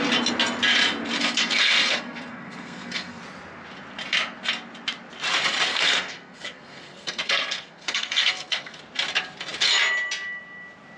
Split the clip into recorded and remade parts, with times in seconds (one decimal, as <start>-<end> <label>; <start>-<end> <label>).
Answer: 0.0-1.2 recorded; 1.2-3.2 remade; 3.2-5.7 recorded; 5.7-8.8 remade; 8.8-11.0 recorded